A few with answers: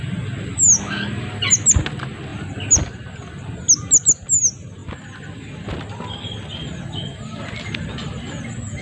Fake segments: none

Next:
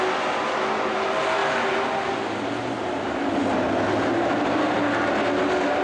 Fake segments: none

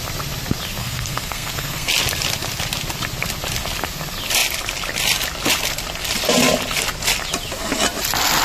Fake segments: 0.8-1.9

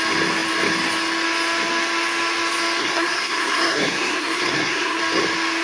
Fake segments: 2.8-5.0